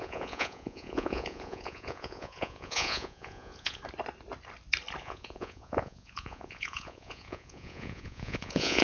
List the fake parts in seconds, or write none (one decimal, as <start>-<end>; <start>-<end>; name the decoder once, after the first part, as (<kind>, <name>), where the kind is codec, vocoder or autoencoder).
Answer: 0.0-3.8 (vocoder, Vocos); 5.0-8.8